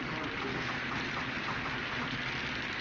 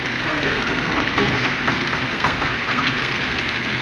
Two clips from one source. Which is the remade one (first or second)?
second